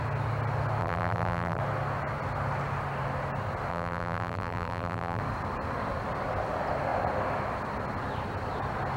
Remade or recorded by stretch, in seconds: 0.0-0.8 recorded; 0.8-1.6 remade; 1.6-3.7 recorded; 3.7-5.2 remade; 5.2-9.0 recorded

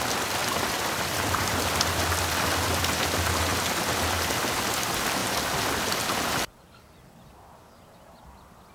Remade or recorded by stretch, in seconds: 0.0-0.4 recorded; 0.4-1.7 remade; 1.7-5.2 recorded; 5.2-6.5 remade; 6.5-8.7 recorded

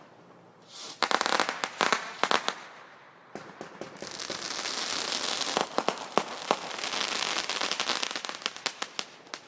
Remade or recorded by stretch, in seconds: 0.0-9.5 recorded

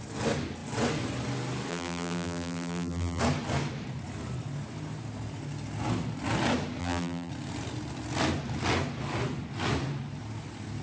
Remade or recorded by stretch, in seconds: 0.0-1.7 recorded; 1.7-3.2 remade; 3.2-6.8 recorded; 6.8-7.3 remade; 7.3-10.8 recorded

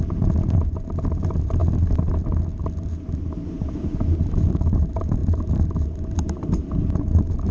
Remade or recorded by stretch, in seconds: 0.0-1.6 remade; 1.6-2.6 recorded; 2.6-7.5 remade

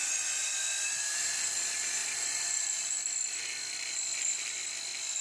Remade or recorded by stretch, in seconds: 0.0-0.4 recorded; 0.4-1.3 remade; 1.3-5.2 recorded

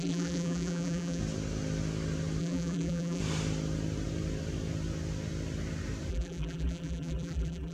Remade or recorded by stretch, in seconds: 0.0-1.2 remade; 1.2-2.4 recorded; 2.4-3.2 remade; 3.2-6.1 recorded; 6.1-7.7 remade

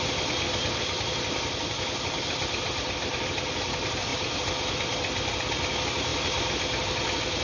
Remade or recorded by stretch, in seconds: 0.0-4.1 recorded; 4.1-4.6 remade; 4.6-7.4 recorded